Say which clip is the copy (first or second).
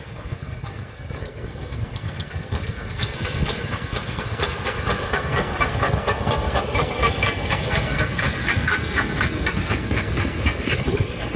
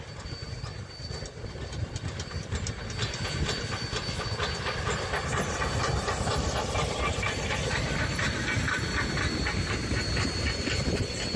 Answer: first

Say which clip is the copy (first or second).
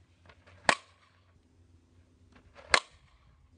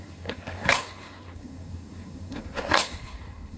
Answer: second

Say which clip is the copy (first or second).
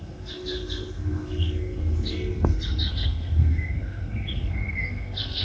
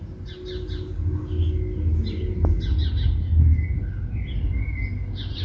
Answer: first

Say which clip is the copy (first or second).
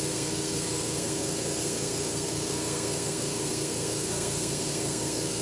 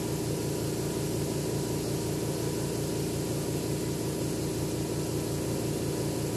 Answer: first